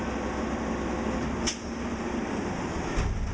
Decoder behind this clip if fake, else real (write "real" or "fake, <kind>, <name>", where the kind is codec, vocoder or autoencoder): real